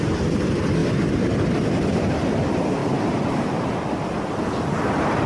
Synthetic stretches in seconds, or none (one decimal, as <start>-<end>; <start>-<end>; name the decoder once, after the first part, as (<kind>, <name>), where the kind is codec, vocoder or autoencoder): 2.8-3.7 (vocoder, BigVGAN v2)